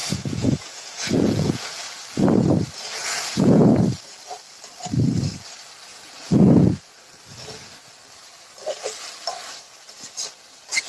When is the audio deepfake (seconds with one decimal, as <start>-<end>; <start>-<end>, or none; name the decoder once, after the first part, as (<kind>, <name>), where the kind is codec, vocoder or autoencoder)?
0.0-1.8 (vocoder, Vocos); 3.0-3.7; 5.9-6.7